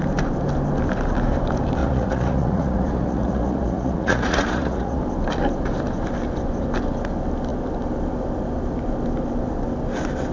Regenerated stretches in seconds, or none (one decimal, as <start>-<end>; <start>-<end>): 1.8-5.0

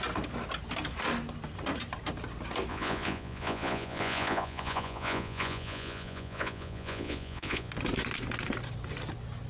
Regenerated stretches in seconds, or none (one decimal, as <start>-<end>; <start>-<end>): 2.7-7.7